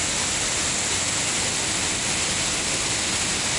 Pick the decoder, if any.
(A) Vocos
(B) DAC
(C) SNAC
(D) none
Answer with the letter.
D